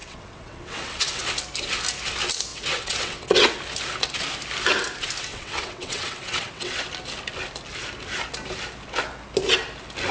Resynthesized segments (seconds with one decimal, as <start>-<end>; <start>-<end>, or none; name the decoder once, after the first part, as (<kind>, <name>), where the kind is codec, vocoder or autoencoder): 0.0-1.2 (vocoder, WaveNeXt); 2.5-3.5; 5.3-6.8

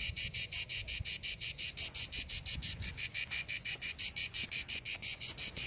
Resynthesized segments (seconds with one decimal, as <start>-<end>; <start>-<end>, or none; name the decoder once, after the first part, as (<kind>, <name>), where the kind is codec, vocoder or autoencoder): 0.0-5.7 (vocoder, Vocos)

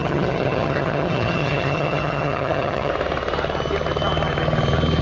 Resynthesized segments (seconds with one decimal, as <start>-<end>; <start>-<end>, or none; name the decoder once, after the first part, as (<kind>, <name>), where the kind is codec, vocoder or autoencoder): 0.0-2.9 (vocoder, HiFi-GAN)

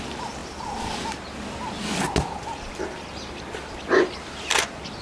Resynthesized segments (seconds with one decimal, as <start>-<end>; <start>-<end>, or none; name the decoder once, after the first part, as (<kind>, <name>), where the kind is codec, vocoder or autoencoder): none

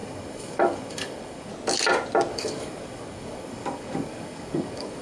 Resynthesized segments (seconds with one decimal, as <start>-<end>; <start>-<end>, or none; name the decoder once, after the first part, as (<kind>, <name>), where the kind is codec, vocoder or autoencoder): 0.0-1.5 (codec, DAC); 2.3-5.0

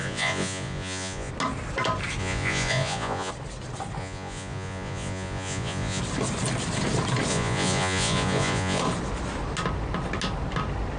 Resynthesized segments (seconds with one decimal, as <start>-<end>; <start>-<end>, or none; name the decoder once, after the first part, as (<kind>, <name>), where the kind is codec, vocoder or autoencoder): 0.0-1.3 (vocoder, Vocos); 2.2-3.3; 4.0-6.0; 7.3-8.8

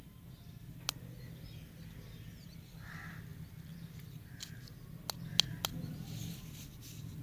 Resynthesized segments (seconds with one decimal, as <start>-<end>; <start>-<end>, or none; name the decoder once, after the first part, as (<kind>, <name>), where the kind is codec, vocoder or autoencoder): none